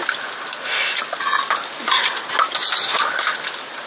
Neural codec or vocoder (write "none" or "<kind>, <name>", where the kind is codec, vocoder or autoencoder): none